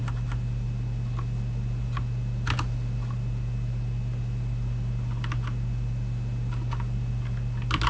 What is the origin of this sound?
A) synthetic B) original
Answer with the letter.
B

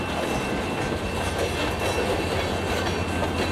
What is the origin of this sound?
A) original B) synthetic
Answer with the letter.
A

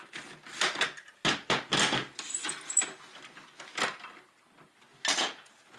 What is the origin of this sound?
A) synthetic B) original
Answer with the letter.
B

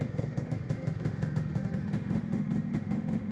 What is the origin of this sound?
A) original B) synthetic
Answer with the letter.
B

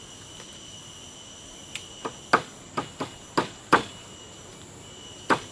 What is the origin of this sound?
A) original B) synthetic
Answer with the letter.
A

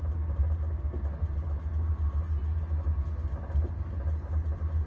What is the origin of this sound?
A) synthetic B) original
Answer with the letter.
B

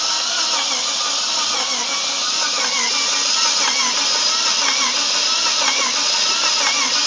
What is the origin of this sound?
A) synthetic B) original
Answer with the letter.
B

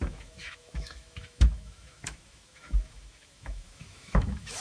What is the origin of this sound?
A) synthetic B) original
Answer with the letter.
A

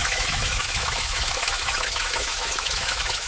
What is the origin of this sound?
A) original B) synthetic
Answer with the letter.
B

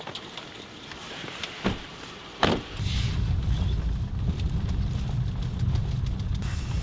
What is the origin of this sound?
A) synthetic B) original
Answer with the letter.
B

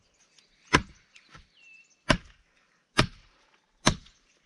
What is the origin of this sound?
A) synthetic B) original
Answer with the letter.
B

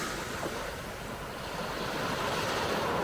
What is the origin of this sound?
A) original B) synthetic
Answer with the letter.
A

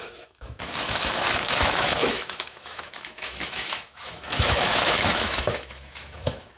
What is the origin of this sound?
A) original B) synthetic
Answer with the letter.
B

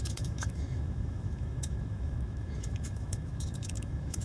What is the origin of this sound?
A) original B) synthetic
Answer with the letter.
B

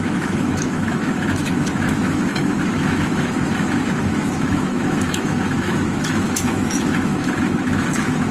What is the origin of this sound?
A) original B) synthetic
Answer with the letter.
B